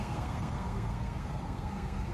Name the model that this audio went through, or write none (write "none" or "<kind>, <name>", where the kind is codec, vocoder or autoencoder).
codec, SNAC